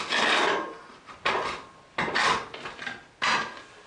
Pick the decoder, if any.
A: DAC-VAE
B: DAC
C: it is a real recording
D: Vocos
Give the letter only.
C